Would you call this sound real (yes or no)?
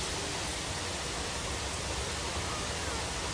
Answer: yes